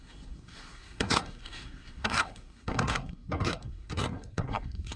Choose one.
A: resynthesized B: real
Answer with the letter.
A